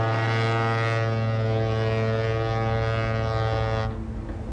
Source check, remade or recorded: recorded